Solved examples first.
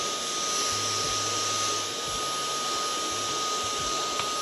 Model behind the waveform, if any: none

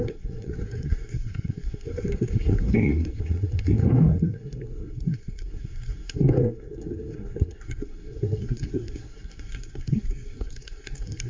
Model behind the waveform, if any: codec, SNAC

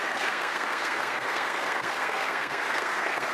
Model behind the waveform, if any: codec, SNAC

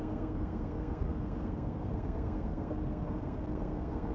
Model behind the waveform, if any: codec, SNAC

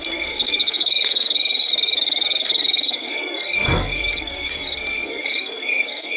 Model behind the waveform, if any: codec, SNAC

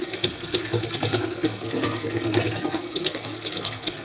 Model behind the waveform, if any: codec, SNAC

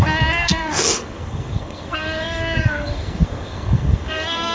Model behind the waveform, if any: codec, SNAC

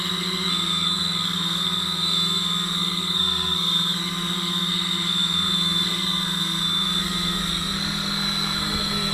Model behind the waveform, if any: codec, SNAC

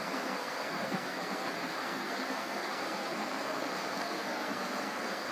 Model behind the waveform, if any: codec, SNAC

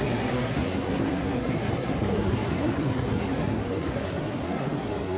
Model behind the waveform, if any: codec, SNAC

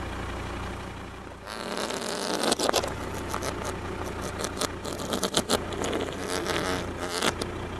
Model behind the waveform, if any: none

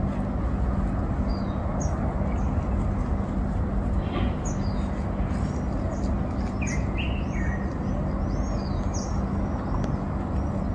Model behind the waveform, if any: none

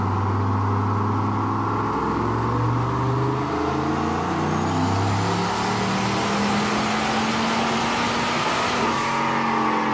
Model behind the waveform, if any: none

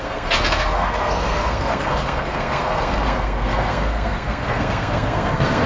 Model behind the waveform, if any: codec, SNAC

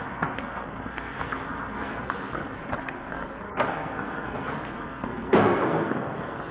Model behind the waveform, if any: codec, SNAC